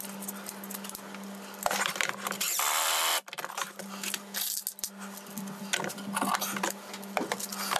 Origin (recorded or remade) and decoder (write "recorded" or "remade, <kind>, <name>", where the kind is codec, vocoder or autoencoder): recorded